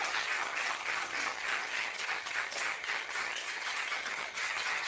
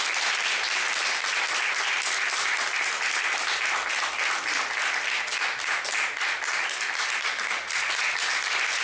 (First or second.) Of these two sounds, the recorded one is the second